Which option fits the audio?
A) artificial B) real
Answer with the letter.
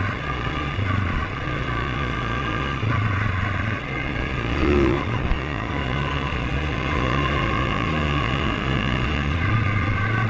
A